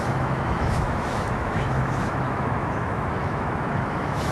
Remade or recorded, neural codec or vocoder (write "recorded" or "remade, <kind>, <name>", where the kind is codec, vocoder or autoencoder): remade, autoencoder, DAC-VAE